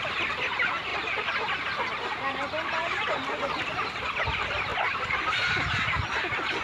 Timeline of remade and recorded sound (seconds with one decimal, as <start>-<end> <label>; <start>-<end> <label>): 0.0-6.6 recorded